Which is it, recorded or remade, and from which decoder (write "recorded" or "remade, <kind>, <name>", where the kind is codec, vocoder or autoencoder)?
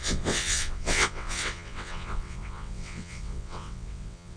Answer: remade, vocoder, WaveNeXt